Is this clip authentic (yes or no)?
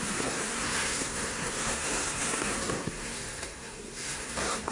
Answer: no